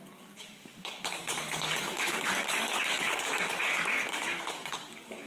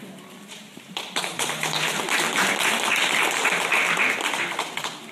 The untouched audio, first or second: second